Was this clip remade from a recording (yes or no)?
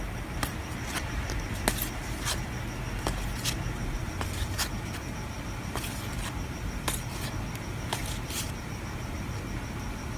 no